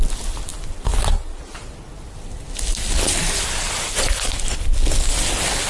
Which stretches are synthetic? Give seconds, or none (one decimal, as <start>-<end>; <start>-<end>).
none